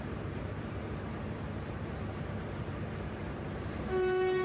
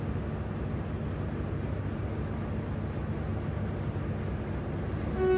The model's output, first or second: first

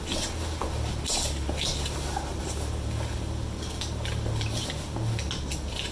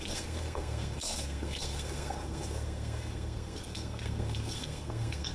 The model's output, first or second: second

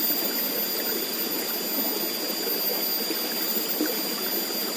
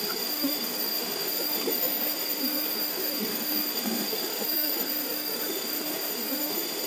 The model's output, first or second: second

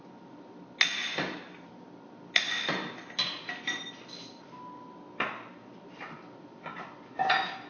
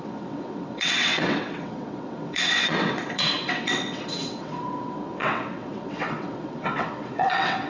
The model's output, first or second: second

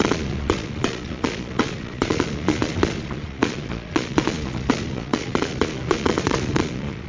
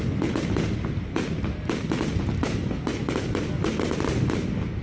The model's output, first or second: first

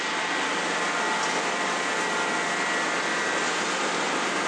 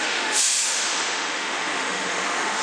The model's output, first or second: second